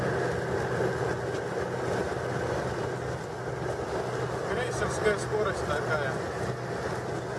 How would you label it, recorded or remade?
recorded